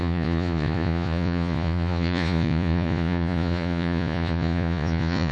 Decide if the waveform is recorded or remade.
remade